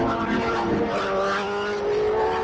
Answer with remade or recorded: recorded